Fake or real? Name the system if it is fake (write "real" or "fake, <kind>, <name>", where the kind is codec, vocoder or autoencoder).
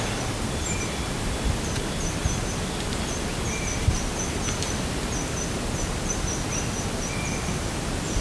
real